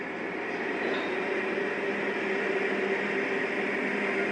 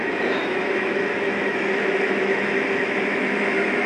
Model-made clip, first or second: second